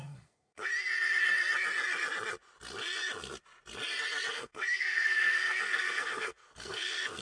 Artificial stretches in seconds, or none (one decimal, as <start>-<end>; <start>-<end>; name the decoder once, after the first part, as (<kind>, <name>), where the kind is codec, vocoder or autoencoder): 0.0-0.7 (codec, SNAC); 4.3-7.2